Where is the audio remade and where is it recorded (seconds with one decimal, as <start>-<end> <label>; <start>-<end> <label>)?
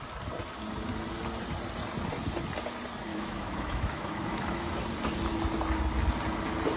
0.0-3.1 recorded; 3.1-4.7 remade; 4.7-6.8 recorded